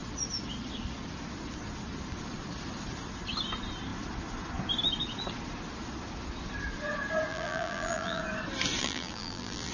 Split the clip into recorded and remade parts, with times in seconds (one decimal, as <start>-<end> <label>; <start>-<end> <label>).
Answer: 0.0-7.3 recorded; 7.3-8.2 remade; 8.2-8.8 recorded; 8.8-9.7 remade